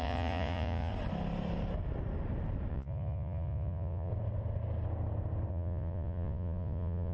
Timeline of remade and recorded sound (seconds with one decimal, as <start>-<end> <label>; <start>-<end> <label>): 0.0-0.9 remade; 0.9-2.7 recorded; 2.7-4.1 remade; 4.1-5.5 recorded; 5.5-7.1 remade